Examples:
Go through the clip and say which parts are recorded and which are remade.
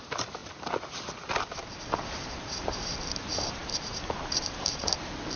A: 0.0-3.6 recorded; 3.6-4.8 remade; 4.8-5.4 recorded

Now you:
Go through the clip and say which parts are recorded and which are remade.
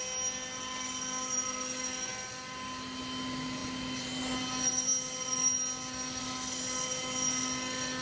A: 0.0-8.0 recorded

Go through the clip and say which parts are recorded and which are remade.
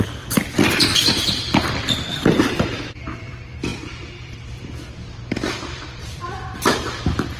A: 0.0-7.4 remade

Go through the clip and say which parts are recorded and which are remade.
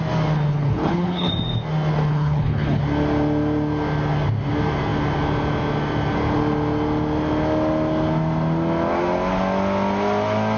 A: 0.0-0.5 recorded; 0.5-1.3 remade; 1.3-2.1 recorded; 2.1-2.8 remade; 2.8-10.6 recorded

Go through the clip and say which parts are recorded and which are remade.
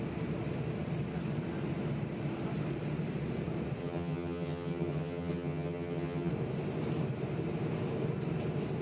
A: 0.0-3.8 recorded; 3.8-6.3 remade; 6.3-8.8 recorded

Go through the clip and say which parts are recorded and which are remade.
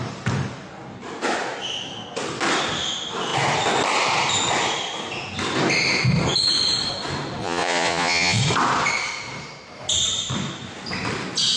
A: 0.0-7.4 recorded; 7.4-8.4 remade; 8.4-11.6 recorded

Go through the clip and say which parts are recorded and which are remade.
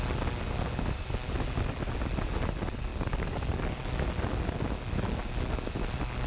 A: 0.0-2.9 recorded; 2.9-3.8 remade; 3.8-6.3 recorded